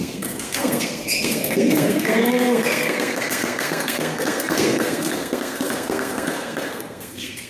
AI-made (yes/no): yes